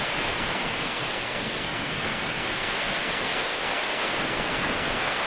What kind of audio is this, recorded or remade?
remade